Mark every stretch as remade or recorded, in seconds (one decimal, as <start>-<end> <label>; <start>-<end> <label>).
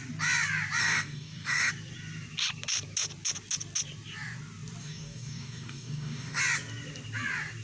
0.0-0.8 recorded; 0.8-1.7 remade; 1.7-4.8 recorded; 4.8-6.4 remade; 6.4-7.6 recorded